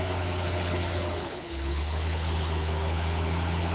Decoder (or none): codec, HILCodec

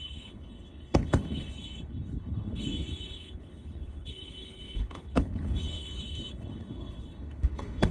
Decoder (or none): codec, HILCodec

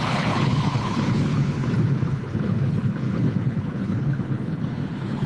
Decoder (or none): codec, HILCodec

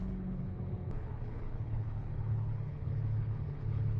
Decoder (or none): codec, HILCodec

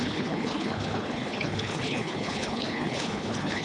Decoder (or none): codec, HILCodec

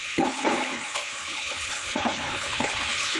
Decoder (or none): codec, HILCodec